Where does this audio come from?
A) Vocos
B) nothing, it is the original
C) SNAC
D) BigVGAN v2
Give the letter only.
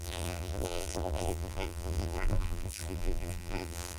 D